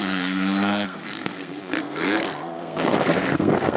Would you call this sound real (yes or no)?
no